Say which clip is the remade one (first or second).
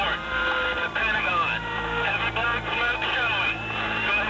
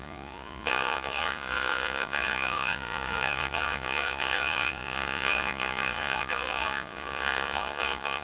second